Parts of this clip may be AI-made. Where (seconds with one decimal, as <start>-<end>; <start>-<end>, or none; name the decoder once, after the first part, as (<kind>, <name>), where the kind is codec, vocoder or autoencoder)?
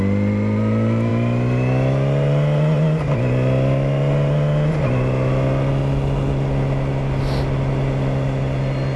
none